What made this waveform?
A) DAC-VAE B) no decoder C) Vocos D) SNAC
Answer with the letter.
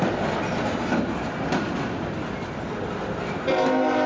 B